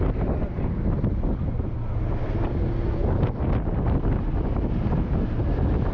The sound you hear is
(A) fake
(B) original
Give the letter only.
B